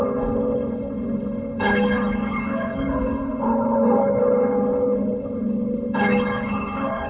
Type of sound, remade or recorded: remade